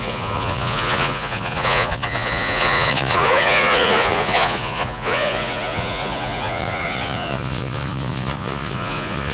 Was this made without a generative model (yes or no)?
no